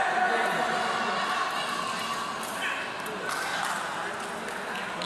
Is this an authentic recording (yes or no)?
yes